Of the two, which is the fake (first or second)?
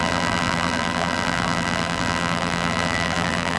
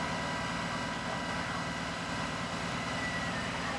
first